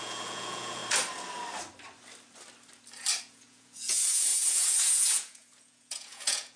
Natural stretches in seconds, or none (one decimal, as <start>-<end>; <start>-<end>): 0.8-3.2